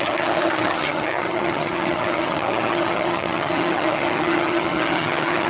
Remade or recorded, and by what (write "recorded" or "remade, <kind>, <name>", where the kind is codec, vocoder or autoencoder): remade, vocoder, HiFi-GAN